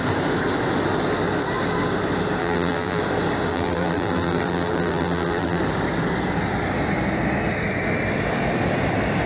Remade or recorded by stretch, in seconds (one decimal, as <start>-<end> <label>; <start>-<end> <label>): 0.0-2.4 recorded; 2.4-3.0 remade; 3.0-3.5 recorded; 3.5-5.6 remade; 5.6-9.3 recorded